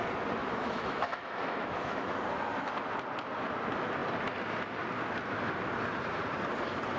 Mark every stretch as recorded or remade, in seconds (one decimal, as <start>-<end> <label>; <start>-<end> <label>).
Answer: 0.0-0.4 recorded; 0.4-2.2 remade; 2.2-7.0 recorded